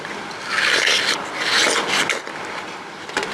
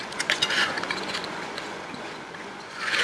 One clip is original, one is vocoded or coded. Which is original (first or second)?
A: first